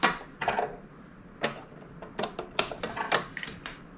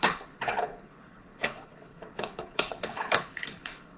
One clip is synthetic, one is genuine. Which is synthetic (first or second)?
second